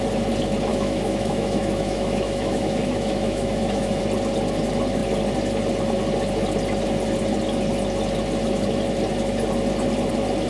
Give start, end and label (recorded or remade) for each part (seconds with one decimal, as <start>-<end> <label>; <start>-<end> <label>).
0.0-0.7 recorded; 0.7-4.0 remade; 4.0-10.5 recorded